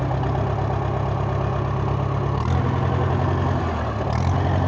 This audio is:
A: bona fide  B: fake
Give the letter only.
A